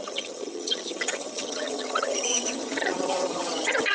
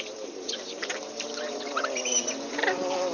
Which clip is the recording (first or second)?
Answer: second